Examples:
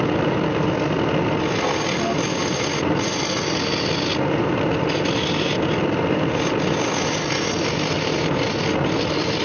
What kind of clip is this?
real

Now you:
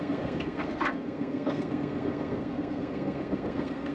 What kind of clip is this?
fake